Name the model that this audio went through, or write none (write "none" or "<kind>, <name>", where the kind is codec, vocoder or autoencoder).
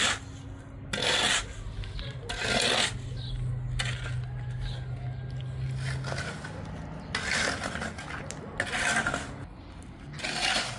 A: none